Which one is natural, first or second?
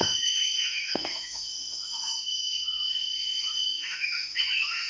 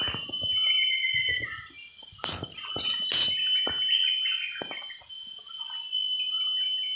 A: second